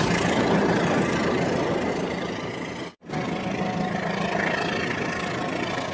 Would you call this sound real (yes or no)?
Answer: yes